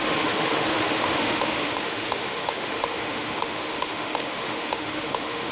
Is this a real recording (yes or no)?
no